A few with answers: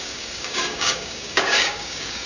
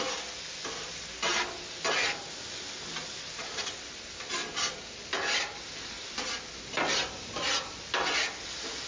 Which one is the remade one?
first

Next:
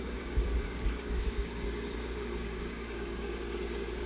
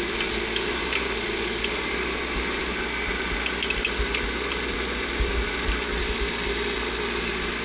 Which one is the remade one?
first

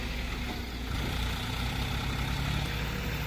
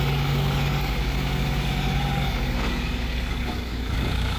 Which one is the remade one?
second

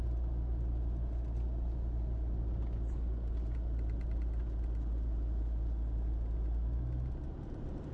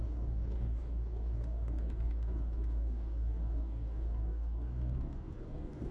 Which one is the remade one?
second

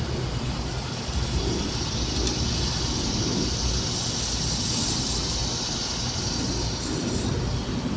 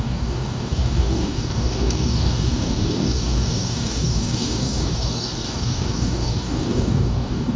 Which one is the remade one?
second